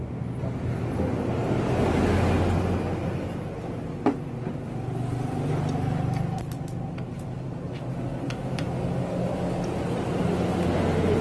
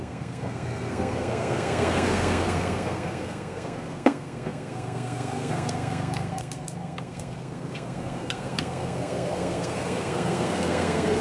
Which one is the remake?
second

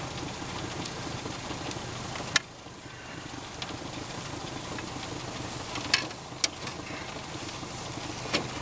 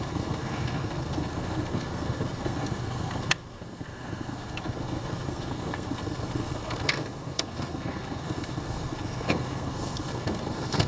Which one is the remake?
second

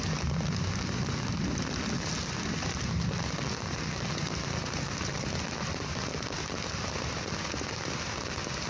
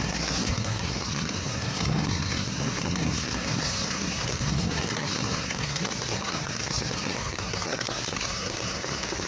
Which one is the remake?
second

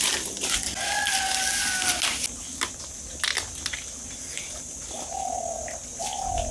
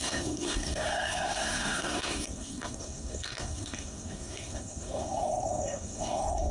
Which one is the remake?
second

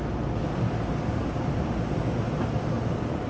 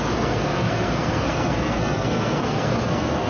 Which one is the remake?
second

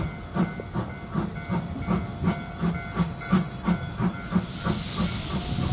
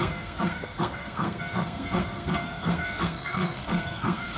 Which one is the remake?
second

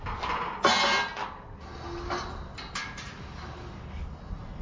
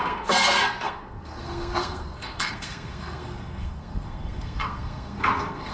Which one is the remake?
second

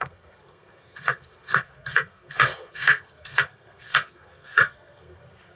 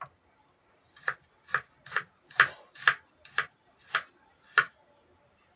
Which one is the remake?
first